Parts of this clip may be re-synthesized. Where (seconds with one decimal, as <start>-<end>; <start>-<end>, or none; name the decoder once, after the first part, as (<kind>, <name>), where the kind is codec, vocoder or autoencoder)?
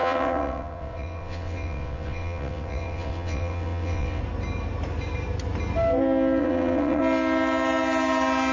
0.0-4.2 (vocoder, WaveNeXt); 6.4-7.0